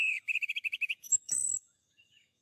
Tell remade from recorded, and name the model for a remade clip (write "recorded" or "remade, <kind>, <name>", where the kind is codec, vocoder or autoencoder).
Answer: remade, autoencoder, DAC-VAE